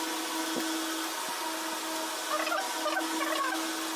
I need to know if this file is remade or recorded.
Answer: recorded